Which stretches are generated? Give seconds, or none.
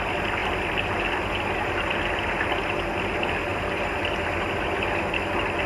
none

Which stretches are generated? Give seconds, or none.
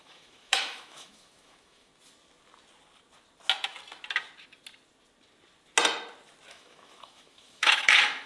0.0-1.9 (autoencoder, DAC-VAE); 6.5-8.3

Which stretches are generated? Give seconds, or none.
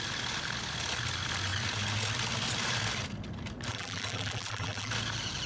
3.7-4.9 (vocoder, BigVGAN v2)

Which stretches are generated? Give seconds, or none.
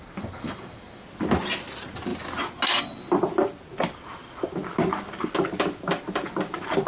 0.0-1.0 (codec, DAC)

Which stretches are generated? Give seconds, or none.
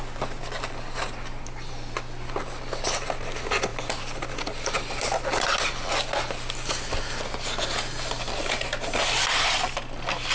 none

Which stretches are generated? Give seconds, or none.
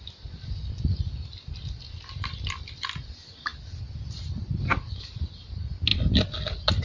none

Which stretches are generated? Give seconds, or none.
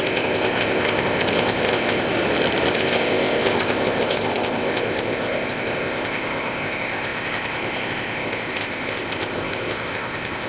0.0-2.1 (codec, ZipCodec); 2.7-10.5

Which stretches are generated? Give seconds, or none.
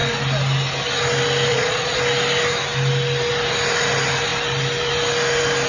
1.5-2.0 (vocoder, Vocos)